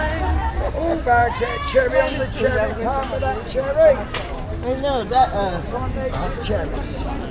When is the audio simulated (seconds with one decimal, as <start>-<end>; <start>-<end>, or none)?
none